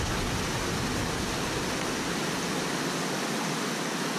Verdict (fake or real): real